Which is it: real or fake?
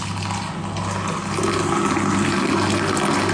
real